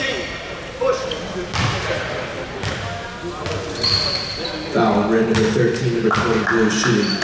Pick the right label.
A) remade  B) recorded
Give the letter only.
B